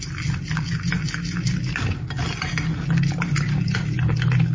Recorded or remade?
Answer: recorded